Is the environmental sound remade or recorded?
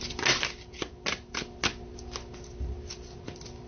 recorded